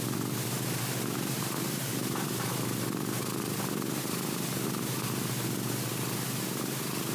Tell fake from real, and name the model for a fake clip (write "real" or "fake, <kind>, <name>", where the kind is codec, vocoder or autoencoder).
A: fake, vocoder, BigVGAN v2